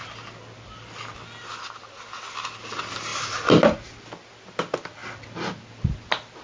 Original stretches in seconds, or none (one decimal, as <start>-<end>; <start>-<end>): 0.0-6.4